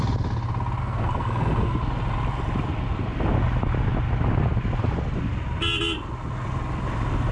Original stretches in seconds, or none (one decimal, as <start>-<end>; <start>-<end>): 0.0-0.8; 1.8-7.3